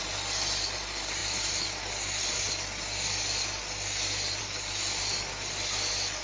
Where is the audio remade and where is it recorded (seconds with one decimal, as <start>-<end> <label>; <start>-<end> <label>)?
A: 0.0-6.2 recorded

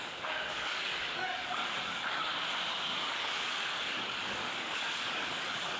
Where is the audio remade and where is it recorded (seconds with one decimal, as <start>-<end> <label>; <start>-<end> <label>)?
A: 0.0-2.3 remade; 2.3-3.0 recorded; 3.0-5.8 remade

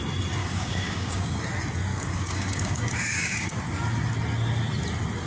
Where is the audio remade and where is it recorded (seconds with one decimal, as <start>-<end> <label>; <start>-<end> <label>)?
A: 0.0-0.4 recorded; 0.4-1.4 remade; 1.4-1.9 recorded; 1.9-3.6 remade; 3.6-5.3 recorded

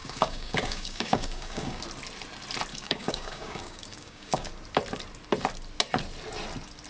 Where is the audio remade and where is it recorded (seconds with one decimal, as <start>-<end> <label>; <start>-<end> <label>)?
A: 0.0-1.8 remade; 1.8-2.7 recorded; 2.7-4.5 remade; 4.5-6.9 recorded

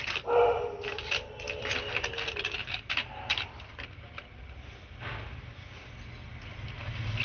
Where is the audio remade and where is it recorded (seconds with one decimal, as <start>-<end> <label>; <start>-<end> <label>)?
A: 0.0-7.2 recorded

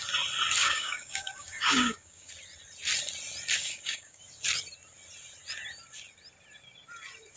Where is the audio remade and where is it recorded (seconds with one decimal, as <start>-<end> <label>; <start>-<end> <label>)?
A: 0.0-0.6 recorded; 0.6-2.3 remade; 2.3-3.6 recorded; 3.6-4.2 remade; 4.2-7.4 recorded

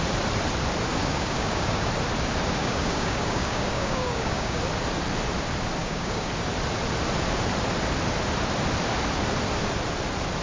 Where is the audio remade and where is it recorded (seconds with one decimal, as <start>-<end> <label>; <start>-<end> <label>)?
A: 0.0-1.0 recorded; 1.0-1.9 remade; 1.9-2.6 recorded; 2.6-4.6 remade; 4.6-5.8 recorded; 5.8-6.3 remade; 6.3-10.4 recorded